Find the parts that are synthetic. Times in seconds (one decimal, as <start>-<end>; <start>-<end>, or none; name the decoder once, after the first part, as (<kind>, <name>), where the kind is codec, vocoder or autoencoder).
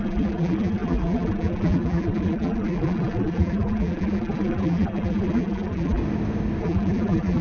0.0-6.0 (vocoder, BigVGAN v2); 6.6-7.4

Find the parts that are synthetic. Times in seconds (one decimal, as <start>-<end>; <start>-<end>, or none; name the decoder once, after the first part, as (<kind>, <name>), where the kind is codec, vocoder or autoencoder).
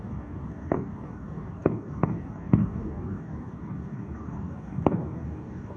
0.0-5.8 (codec, DAC)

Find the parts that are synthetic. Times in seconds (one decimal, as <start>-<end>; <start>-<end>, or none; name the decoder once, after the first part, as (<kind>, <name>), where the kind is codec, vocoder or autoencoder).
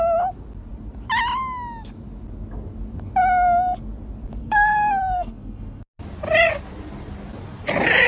4.4-5.8 (codec, SNAC)